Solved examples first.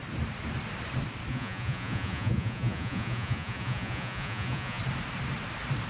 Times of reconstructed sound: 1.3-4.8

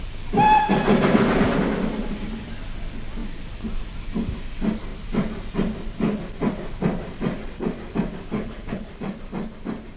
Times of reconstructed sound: 8.3-8.9

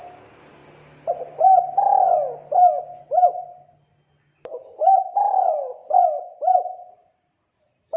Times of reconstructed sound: 0.6-1.3; 3.3-3.9; 5.8-7.6

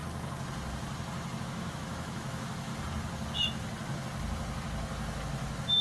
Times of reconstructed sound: 1.4-2.7

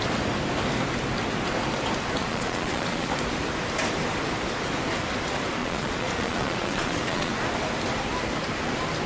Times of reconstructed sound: 2.2-3.1; 5.6-7.3

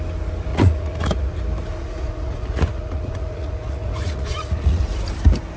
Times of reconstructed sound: 0.5-1.4; 1.8-4.8

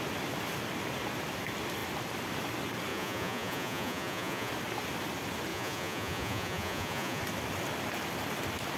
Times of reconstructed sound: 2.9-4.5; 5.5-7.2